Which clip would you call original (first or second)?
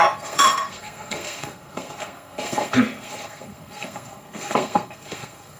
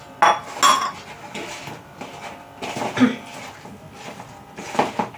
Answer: second